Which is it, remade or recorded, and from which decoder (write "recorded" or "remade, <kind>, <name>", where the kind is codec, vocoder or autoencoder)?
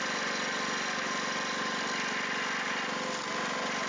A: recorded